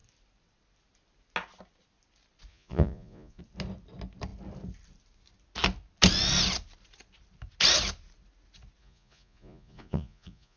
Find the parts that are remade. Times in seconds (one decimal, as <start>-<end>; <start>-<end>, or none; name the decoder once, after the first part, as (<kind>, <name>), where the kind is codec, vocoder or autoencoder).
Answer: 2.5-3.4 (vocoder, Vocos); 8.8-10.6